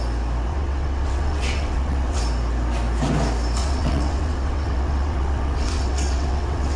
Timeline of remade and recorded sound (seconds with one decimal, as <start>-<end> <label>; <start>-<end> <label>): 0.0-0.5 recorded; 0.5-2.2 remade; 2.2-3.6 recorded; 3.6-6.8 remade